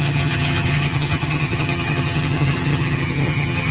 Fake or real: fake